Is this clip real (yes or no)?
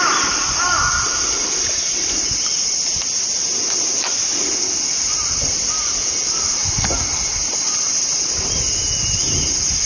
yes